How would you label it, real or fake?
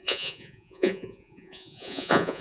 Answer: fake